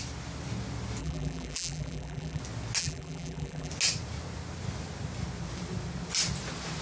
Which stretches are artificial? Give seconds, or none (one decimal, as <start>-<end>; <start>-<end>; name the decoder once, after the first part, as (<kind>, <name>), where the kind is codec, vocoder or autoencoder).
1.0-2.4 (vocoder, BigVGAN v2); 2.8-3.7